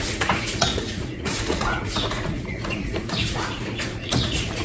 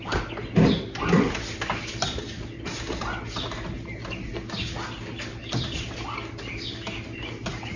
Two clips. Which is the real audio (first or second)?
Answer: second